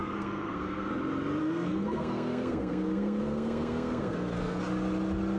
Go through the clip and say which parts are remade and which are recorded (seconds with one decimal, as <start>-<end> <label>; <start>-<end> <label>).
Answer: 0.0-0.9 remade; 0.9-1.4 recorded; 1.4-4.6 remade; 4.6-5.4 recorded